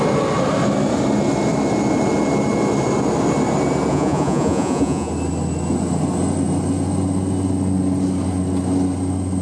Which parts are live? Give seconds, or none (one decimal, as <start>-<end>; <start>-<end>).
0.0-3.9; 5.1-9.4